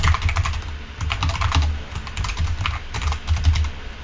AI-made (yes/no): no